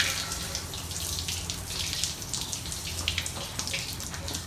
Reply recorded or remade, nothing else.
recorded